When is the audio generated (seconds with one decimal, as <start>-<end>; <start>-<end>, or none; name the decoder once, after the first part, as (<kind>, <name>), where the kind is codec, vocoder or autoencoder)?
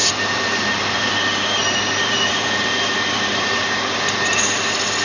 0.0-1.1 (vocoder, BigVGAN v2); 1.6-4.6